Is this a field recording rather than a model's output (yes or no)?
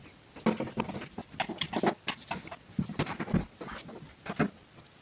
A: yes